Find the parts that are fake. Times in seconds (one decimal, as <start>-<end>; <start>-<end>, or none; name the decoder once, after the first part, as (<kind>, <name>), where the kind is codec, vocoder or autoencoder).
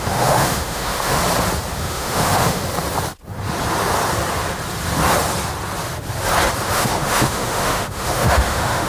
0.0-1.2 (autoencoder, DAC-VAE); 1.8-2.6; 6.7-8.9